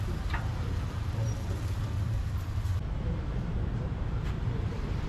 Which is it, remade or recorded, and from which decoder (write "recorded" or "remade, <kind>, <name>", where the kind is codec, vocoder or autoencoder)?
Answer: remade, vocoder, BigVGAN v2